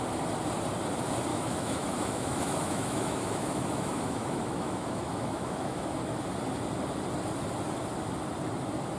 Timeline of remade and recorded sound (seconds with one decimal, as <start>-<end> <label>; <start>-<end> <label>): 0.0-1.3 recorded; 1.3-6.0 remade; 6.0-9.0 recorded